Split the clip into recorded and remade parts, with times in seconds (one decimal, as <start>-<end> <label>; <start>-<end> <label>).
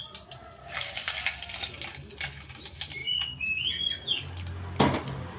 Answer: 0.0-0.6 recorded; 0.6-1.1 remade; 1.1-5.4 recorded